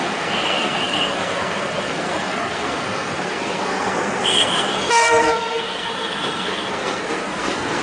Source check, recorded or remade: remade